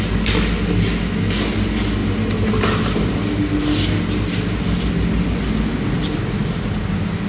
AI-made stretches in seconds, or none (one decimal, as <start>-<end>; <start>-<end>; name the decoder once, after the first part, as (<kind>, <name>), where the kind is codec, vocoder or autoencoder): none